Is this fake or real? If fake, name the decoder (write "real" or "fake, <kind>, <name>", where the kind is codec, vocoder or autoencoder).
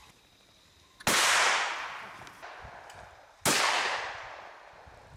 real